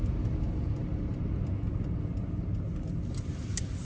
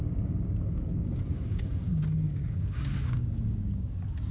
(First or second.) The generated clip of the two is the second